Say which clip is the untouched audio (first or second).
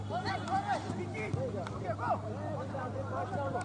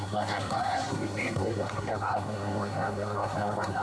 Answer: first